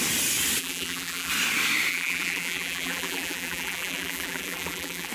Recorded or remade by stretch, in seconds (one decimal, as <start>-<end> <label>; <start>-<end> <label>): 0.0-0.6 recorded; 0.6-1.3 remade; 1.3-1.9 recorded; 1.9-5.1 remade